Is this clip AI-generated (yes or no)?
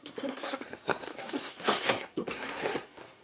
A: yes